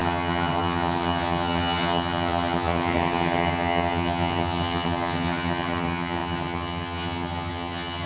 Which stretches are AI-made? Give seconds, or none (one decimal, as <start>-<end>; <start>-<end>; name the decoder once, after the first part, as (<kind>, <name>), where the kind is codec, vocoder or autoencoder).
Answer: 0.0-8.1 (vocoder, HiFi-GAN)